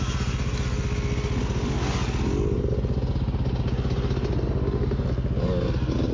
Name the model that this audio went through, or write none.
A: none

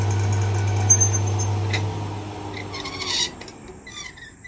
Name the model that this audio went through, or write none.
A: none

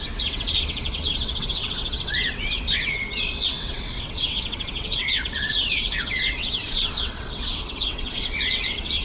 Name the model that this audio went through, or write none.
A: vocoder, WaveNeXt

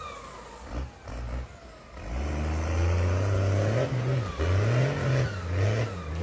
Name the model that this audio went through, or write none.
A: none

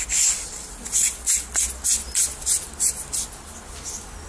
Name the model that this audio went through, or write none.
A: none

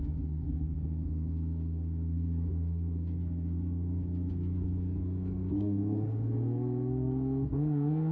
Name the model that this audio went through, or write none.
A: codec, SNAC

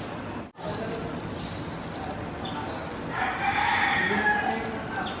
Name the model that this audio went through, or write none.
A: none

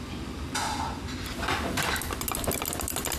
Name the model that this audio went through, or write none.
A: none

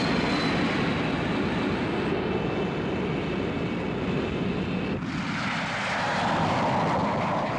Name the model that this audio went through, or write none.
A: none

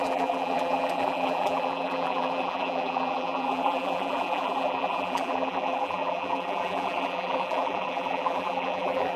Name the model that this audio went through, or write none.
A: vocoder, BigVGAN v2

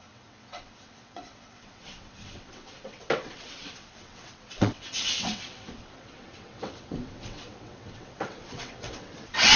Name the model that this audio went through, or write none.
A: vocoder, WaveNeXt